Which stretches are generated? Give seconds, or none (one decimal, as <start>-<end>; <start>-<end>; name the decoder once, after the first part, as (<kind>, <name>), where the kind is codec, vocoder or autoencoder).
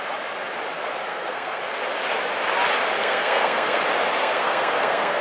1.1-1.6 (codec, SNAC); 3.0-3.8; 4.2-5.2